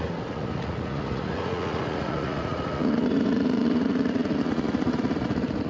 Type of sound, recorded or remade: remade